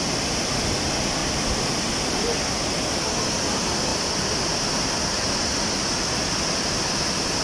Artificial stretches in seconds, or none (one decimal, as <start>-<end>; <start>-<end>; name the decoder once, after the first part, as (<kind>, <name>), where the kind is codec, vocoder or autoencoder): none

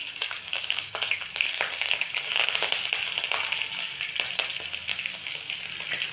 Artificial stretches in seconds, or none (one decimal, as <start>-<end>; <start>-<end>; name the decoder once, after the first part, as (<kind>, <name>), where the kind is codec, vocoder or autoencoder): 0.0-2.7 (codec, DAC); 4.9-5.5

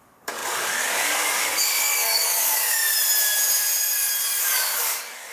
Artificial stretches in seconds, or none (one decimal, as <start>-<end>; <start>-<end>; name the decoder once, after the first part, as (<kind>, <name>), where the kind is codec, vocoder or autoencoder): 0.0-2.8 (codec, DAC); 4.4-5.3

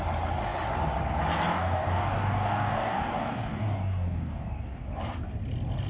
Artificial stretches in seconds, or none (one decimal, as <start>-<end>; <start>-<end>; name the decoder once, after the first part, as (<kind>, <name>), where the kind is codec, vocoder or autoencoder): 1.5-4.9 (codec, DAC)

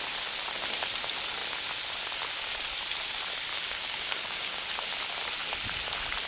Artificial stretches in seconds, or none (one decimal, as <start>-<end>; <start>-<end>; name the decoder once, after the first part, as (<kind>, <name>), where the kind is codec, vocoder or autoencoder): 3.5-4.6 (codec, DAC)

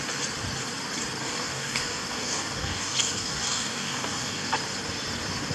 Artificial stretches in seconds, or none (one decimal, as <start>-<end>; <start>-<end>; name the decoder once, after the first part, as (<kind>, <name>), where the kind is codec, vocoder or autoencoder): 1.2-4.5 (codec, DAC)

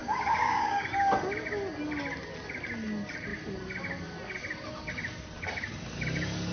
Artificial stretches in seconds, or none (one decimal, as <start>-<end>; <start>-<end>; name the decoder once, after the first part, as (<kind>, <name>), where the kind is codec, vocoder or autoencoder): 0.0-0.8 (codec, DAC)